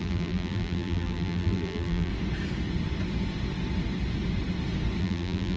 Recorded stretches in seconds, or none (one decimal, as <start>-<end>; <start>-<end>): 2.1-5.0